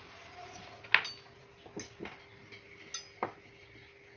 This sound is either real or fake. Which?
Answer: real